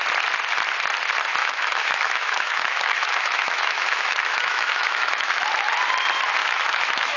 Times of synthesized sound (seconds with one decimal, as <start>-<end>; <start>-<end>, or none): 1.4-5.4; 6.4-7.2